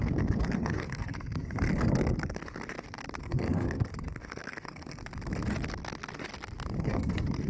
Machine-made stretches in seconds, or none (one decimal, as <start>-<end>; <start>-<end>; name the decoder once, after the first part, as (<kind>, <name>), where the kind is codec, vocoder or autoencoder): 0.0-2.4 (codec, SNAC); 3.2-5.0; 6.8-7.5